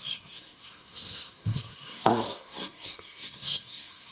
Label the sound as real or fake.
fake